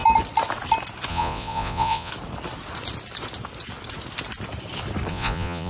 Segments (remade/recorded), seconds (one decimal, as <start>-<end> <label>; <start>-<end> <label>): 0.0-1.1 recorded; 1.1-2.1 remade; 2.1-5.1 recorded; 5.1-5.7 remade

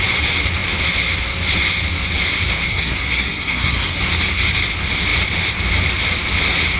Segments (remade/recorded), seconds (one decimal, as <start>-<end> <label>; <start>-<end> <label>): 0.0-2.7 recorded; 2.7-4.0 remade; 4.0-6.8 recorded

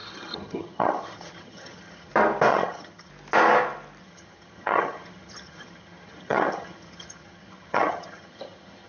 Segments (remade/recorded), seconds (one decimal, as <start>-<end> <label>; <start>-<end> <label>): 0.0-2.1 remade; 2.1-2.5 recorded; 2.5-3.1 remade; 3.1-4.0 recorded; 4.0-8.9 remade

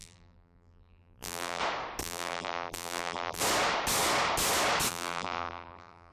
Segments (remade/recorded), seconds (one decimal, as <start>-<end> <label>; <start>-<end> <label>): 0.0-1.6 remade; 1.6-2.0 recorded; 2.0-3.4 remade; 3.4-4.9 recorded; 4.9-6.1 remade

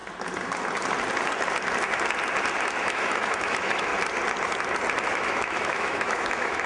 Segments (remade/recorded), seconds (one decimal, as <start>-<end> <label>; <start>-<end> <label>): 0.0-2.6 recorded; 2.6-3.9 remade; 3.9-5.1 recorded; 5.1-6.7 remade